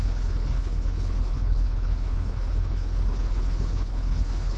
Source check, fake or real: fake